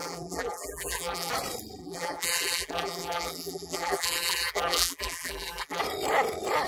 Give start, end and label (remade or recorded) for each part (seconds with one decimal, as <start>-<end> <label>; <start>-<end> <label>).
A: 0.0-1.3 remade; 1.3-1.8 recorded; 1.8-5.8 remade; 5.8-6.7 recorded